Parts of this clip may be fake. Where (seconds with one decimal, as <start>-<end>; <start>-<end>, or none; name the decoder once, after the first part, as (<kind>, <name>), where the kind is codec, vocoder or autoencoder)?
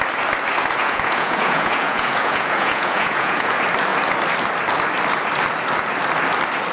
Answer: 0.8-3.5 (vocoder, Vocos)